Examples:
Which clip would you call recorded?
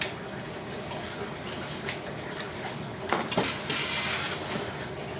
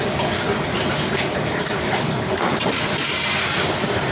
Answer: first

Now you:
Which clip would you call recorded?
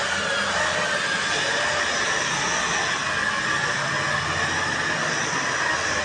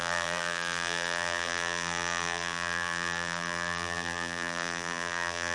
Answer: first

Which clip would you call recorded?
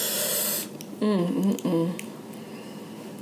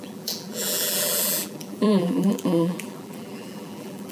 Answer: first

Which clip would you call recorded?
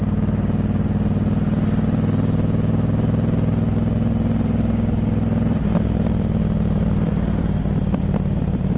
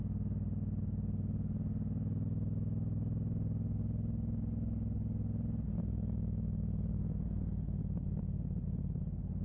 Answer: second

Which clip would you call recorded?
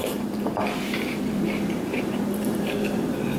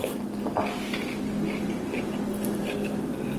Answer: second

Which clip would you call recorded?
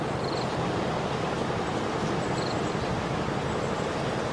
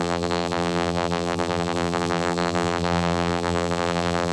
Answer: first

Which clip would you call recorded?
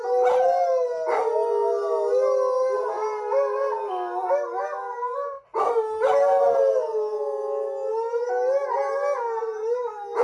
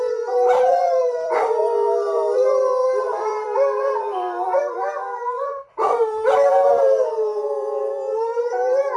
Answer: first